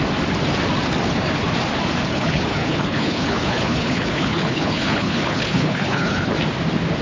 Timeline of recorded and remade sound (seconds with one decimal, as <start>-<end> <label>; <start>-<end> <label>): 0.0-2.1 recorded; 2.1-6.3 remade; 6.3-7.0 recorded

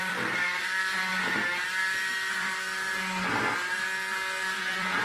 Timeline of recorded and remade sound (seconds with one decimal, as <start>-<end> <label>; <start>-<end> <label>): 0.0-1.1 remade; 1.1-2.3 recorded; 2.3-2.9 remade; 2.9-4.6 recorded; 4.6-5.0 remade

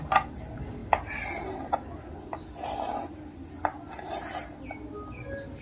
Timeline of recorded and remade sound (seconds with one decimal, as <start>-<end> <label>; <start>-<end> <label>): 0.0-5.6 recorded

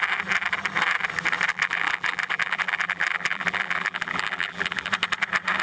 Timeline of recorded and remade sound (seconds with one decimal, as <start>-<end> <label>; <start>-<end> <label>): 0.0-1.5 recorded; 1.5-4.9 remade; 4.9-5.6 recorded

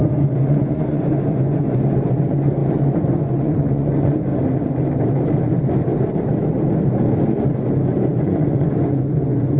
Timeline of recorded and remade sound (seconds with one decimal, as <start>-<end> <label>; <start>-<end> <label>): 0.0-4.3 remade; 4.3-8.2 recorded; 8.2-9.6 remade

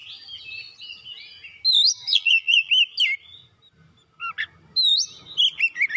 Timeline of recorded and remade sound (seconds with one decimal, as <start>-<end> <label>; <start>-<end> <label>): 0.0-2.1 recorded; 2.1-2.7 remade; 2.7-6.0 recorded

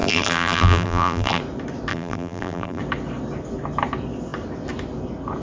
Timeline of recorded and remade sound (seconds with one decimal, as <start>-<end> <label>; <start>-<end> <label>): 0.0-1.4 remade; 1.4-1.9 recorded; 1.9-2.8 remade; 2.8-5.4 recorded